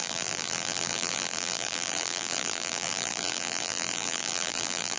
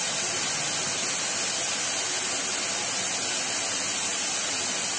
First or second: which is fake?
first